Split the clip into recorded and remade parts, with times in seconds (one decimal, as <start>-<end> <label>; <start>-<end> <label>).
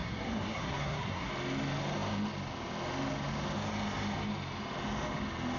0.0-1.3 remade; 1.3-5.6 recorded